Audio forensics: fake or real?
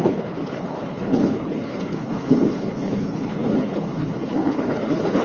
fake